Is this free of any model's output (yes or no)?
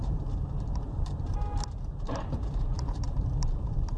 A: no